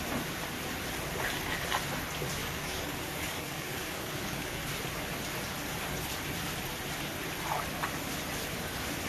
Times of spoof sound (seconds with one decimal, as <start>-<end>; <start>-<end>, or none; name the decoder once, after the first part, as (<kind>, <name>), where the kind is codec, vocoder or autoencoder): 2.4-4.6 (codec, DAC)